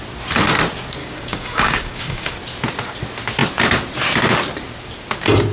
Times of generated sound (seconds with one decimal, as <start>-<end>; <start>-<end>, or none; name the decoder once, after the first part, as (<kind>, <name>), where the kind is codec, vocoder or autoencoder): 1.0-2.3 (codec, DAC)